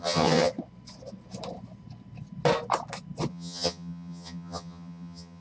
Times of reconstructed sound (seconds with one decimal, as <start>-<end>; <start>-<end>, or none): 0.0-0.5; 3.3-5.4